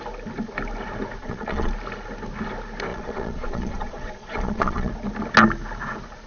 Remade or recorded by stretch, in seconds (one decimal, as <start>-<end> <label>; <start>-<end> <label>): 0.0-1.2 recorded; 1.2-1.7 remade; 1.7-2.9 recorded; 2.9-4.9 remade; 4.9-6.3 recorded